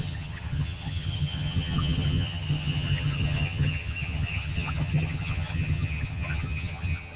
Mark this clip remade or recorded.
remade